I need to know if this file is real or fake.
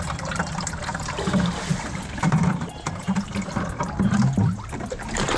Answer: fake